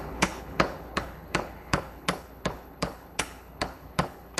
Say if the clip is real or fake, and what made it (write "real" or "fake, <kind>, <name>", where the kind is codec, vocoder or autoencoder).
fake, codec, HILCodec